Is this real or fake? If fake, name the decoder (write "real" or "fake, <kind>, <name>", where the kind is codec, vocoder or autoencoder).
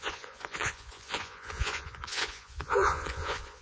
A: fake, vocoder, Vocos